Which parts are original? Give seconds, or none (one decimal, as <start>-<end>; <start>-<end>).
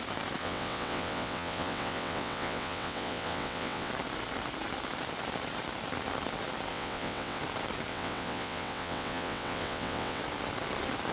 0.0-0.4; 3.9-6.7; 7.4-7.9; 10.2-11.1